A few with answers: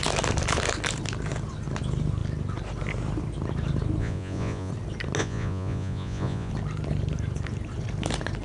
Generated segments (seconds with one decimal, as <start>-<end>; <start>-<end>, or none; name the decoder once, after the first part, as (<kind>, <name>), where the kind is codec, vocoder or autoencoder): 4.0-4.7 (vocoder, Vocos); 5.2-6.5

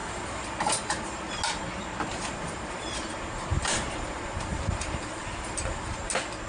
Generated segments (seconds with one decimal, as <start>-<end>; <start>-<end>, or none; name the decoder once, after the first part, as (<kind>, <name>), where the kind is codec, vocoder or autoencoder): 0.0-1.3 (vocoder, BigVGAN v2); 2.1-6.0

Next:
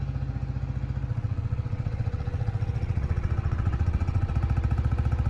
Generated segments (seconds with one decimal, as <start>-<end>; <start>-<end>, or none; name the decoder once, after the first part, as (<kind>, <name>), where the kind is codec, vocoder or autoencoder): 1.1-4.3 (vocoder, WaveNeXt)